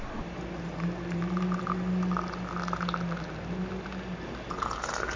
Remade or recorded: recorded